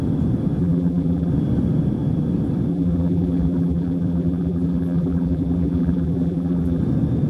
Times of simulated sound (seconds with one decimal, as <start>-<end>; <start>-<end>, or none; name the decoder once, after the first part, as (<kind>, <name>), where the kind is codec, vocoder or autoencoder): 0.6-1.3 (vocoder, BigVGAN v2); 2.7-6.8